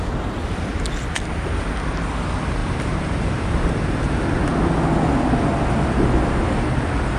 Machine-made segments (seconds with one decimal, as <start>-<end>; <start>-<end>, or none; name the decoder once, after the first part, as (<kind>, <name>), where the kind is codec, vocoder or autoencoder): 2.6-4.0 (vocoder, BigVGAN v2)